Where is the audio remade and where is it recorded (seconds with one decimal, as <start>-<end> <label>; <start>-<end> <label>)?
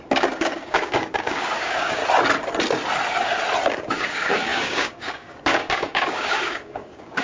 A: 0.0-2.0 remade; 2.0-3.7 recorded; 3.7-7.2 remade